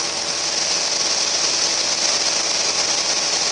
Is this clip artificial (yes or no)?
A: no